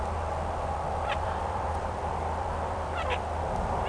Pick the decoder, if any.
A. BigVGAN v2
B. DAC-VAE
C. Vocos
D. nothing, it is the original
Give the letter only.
A